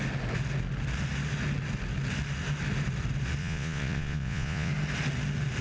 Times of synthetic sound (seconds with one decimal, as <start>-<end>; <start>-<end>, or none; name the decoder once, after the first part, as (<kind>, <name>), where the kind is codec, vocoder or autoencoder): 3.4-4.7 (vocoder, Vocos)